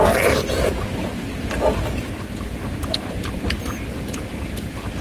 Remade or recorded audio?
recorded